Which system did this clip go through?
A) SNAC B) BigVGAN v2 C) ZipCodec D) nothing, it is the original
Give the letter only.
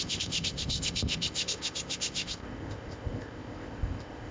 C